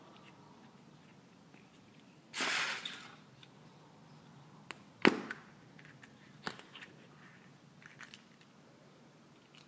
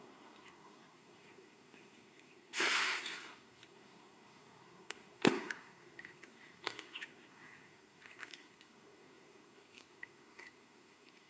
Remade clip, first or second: second